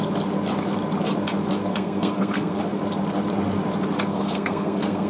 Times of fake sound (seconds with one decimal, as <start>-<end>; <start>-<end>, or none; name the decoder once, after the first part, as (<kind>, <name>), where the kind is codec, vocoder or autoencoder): 1.7-2.6 (codec, SNAC); 4.1-5.1

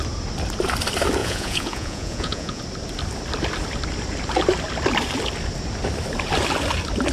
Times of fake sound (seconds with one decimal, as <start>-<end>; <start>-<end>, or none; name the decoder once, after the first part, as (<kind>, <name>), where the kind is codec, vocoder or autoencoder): 1.2-2.6 (vocoder, Vocos)

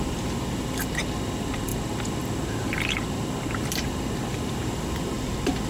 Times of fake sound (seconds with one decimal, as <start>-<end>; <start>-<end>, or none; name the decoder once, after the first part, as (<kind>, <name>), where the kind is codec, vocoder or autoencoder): none

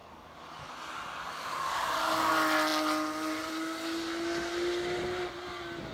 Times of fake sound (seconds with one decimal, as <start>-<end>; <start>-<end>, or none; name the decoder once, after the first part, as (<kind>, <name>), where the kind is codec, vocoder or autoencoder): 0.0-0.7 (codec, DAC); 1.3-2.3

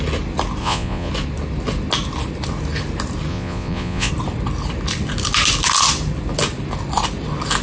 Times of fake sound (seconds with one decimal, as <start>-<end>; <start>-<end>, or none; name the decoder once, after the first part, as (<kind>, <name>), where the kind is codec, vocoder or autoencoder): 0.6-1.1 (vocoder, Vocos); 3.3-4.1

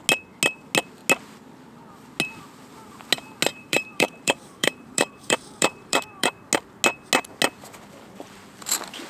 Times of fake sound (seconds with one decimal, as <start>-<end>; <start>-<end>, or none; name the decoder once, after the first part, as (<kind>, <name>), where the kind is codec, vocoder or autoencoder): 3.5-6.3 (vocoder, BigVGAN v2)

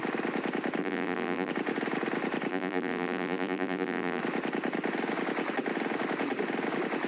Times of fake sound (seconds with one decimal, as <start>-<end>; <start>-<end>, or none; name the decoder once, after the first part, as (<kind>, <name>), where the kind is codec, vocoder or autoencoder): 0.8-1.5 (vocoder, BigVGAN v2); 2.5-4.2

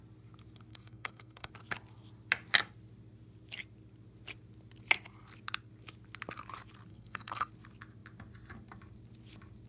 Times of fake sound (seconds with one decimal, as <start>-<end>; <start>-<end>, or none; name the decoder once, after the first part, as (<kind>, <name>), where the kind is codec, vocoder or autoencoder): 0.7-1.5 (codec, SNAC); 6.9-7.5